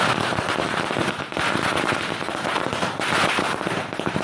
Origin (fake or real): fake